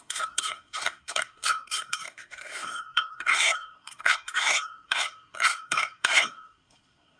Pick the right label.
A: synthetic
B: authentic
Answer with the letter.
A